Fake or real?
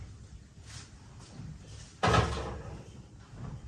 real